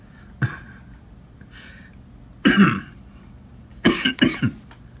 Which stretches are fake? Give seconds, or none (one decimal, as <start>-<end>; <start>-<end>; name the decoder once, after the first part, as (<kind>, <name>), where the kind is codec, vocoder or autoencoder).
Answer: 3.7-4.2 (codec, DAC)